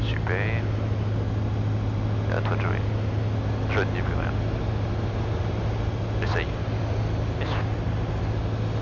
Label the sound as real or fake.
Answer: real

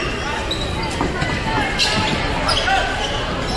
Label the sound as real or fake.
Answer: real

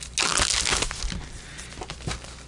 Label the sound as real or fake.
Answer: real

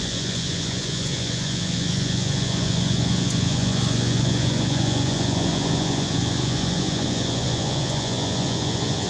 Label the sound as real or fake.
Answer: fake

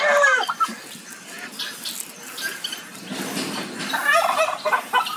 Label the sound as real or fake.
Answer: real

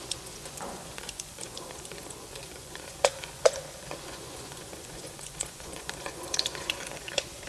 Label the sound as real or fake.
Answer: fake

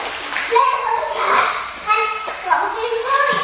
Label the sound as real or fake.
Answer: real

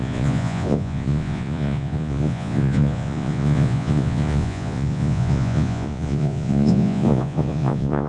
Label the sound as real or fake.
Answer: fake